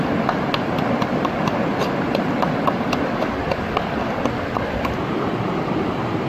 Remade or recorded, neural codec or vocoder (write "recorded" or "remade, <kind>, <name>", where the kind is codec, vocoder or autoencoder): recorded